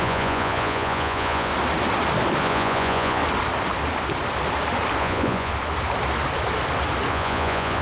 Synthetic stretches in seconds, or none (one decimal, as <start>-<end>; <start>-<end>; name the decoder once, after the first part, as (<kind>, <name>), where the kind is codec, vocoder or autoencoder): 0.0-1.5 (vocoder, Vocos); 2.4-3.2; 5.0-5.5; 7.1-7.8